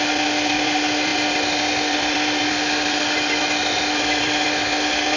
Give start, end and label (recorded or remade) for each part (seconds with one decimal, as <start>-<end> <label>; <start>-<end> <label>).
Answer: 0.0-5.2 recorded